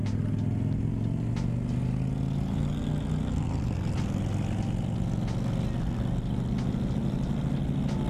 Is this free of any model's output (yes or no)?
yes